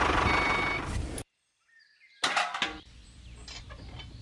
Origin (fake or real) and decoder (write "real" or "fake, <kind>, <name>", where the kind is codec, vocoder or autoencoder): real